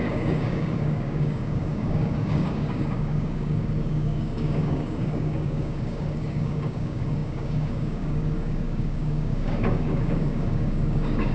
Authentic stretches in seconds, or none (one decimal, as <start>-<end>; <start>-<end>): none